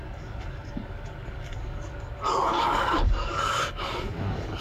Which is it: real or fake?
fake